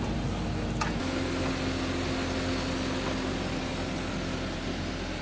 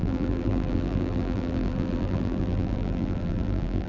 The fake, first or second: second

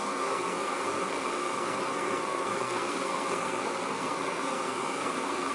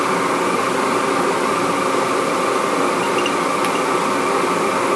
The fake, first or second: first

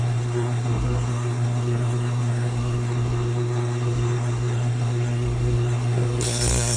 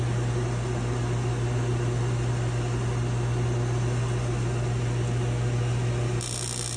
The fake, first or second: first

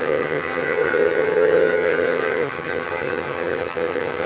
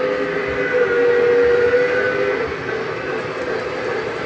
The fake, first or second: first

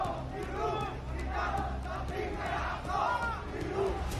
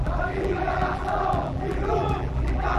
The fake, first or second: second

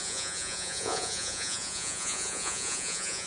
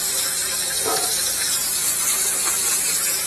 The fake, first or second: first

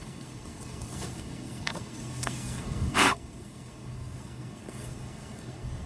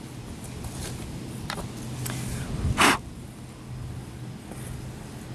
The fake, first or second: first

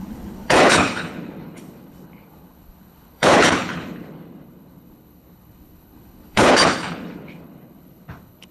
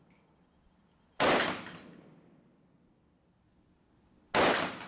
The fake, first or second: first